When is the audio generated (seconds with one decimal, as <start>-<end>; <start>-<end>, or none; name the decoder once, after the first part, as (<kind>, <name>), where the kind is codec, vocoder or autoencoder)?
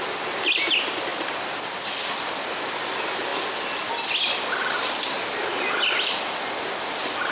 none